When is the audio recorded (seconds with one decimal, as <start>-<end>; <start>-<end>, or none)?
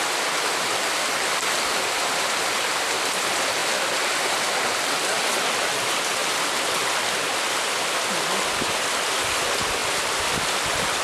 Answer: 3.6-5.1